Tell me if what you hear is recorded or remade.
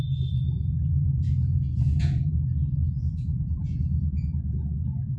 remade